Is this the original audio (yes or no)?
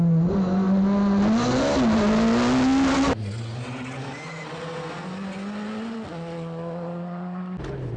yes